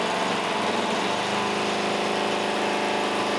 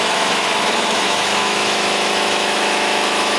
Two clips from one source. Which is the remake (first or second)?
second